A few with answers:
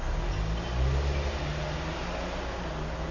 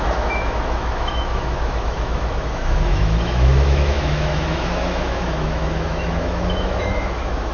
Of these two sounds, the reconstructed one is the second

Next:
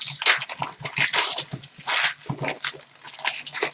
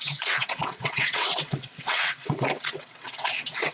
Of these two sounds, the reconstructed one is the second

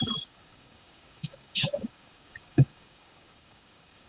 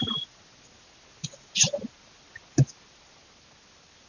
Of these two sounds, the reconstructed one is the first